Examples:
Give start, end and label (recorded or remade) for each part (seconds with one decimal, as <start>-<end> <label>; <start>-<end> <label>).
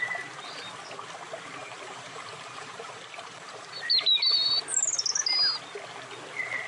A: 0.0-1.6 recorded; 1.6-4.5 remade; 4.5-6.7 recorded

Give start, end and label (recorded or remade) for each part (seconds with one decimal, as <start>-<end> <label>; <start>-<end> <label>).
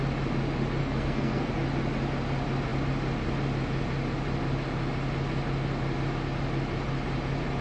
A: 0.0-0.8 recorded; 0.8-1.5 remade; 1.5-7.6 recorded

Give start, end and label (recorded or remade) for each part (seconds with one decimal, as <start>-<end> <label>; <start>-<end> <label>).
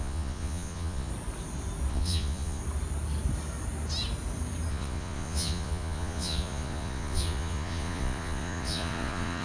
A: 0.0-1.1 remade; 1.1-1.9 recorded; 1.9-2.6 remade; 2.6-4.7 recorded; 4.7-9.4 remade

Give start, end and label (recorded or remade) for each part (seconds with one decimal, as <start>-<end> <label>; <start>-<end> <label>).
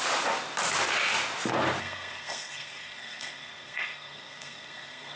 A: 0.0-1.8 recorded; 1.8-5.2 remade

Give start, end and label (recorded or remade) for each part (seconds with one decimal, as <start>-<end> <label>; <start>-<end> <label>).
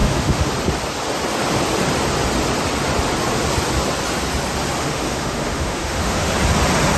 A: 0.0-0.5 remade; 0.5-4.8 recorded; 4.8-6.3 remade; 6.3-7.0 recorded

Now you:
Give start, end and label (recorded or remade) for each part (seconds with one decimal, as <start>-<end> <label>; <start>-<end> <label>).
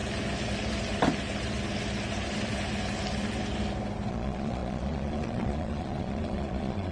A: 0.0-4.1 recorded; 4.1-6.9 remade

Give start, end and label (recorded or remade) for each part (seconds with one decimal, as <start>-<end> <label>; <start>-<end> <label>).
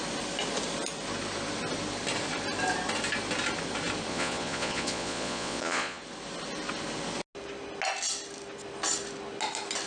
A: 0.0-4.1 recorded; 4.1-6.0 remade; 6.0-9.9 recorded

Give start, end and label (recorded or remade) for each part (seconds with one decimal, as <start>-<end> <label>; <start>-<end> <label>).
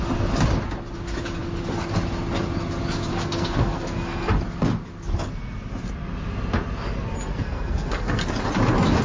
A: 0.0-3.1 recorded; 3.1-4.3 remade; 4.3-7.3 recorded; 7.3-8.4 remade; 8.4-9.0 recorded